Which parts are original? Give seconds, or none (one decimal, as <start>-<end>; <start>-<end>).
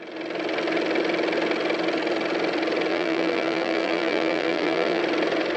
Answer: 0.0-2.9; 5.0-5.6